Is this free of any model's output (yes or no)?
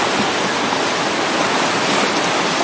yes